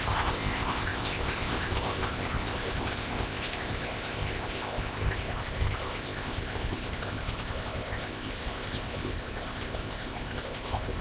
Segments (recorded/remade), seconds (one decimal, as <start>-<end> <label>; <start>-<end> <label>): 0.0-11.0 remade